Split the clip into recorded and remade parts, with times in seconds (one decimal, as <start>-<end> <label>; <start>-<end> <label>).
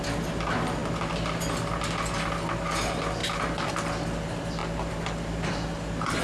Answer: 0.0-3.2 recorded; 3.2-3.7 remade; 3.7-6.2 recorded